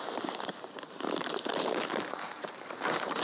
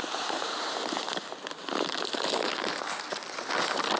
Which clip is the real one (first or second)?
second